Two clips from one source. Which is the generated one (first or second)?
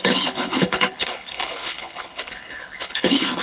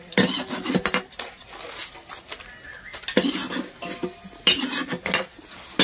first